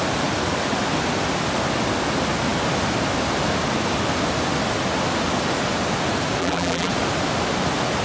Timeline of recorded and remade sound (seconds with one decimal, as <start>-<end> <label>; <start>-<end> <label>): 0.0-6.4 recorded; 6.4-6.9 remade; 6.9-8.0 recorded